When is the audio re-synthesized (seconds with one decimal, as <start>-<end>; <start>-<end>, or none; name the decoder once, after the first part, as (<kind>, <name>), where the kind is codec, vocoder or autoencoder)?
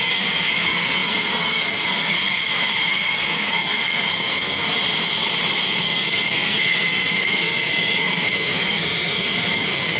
0.0-4.7 (codec, SNAC); 5.8-10.0